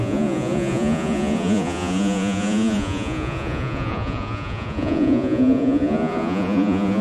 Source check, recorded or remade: remade